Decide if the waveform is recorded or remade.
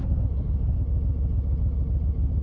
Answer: recorded